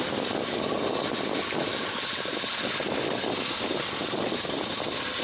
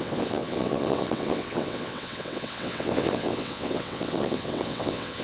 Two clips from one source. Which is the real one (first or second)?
first